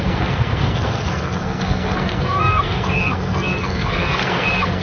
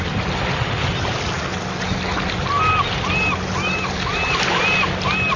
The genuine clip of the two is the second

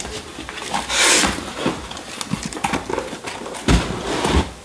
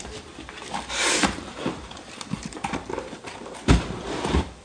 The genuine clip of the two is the first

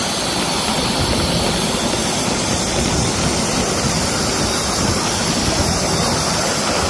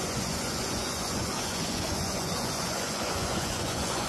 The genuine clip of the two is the first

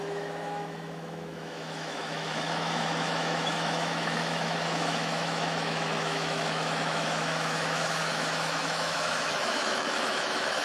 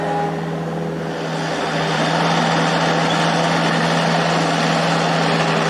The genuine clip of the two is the second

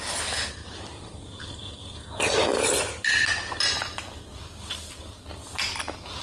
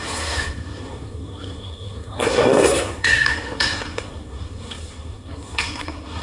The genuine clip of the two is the first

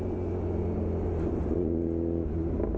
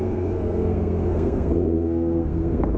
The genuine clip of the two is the first